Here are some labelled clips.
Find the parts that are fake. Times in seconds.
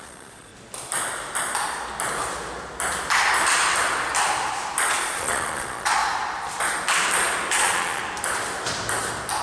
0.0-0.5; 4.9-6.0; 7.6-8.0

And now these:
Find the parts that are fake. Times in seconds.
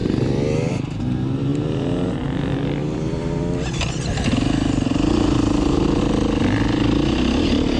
none